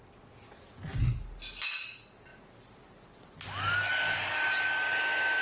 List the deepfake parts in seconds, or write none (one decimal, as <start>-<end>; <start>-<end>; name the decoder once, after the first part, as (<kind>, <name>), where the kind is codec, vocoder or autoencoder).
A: none